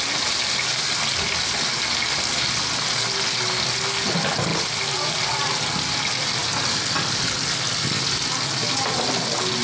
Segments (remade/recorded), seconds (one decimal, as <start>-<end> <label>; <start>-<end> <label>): 0.0-9.6 recorded